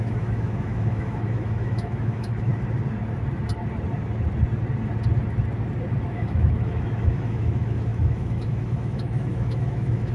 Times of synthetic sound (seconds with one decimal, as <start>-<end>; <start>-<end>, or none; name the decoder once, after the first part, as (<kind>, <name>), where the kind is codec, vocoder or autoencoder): 0.0-2.5 (autoencoder, DAC-VAE); 6.1-10.1